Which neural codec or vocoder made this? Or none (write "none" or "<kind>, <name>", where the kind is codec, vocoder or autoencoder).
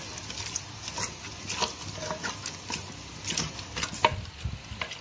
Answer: none